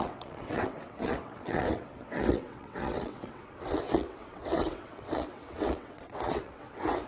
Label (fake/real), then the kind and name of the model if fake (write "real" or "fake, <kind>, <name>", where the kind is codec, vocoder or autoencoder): fake, vocoder, WaveNeXt